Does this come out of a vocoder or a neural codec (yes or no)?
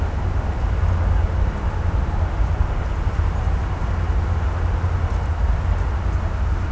no